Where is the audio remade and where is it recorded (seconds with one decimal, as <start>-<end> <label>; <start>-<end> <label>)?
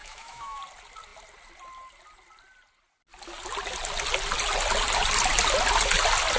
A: 0.0-0.6 remade; 0.6-6.4 recorded